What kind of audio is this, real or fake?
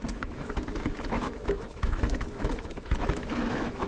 fake